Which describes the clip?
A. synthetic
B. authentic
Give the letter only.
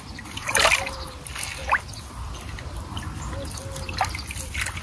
B